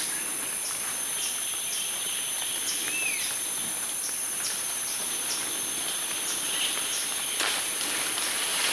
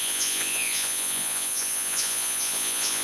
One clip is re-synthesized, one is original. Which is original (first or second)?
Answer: first